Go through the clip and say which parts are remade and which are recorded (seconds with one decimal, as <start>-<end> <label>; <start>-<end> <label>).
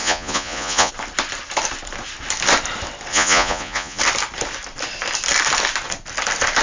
0.0-0.9 remade; 0.9-3.1 recorded; 3.1-4.0 remade; 4.0-6.6 recorded